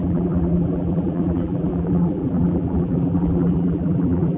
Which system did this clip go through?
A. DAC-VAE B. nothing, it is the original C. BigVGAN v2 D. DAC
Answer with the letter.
C